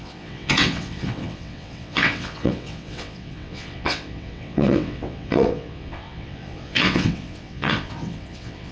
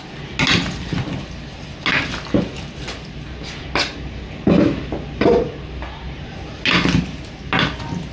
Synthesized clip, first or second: first